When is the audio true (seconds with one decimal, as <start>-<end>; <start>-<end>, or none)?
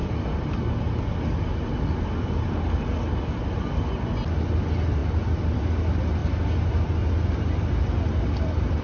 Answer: 0.0-8.8